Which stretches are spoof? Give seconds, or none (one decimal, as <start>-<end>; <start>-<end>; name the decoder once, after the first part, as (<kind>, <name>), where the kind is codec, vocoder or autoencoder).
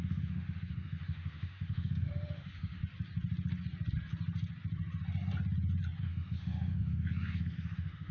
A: 0.0-2.8 (autoencoder, DAC-VAE); 6.0-8.1